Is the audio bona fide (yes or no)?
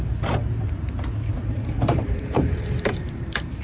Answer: no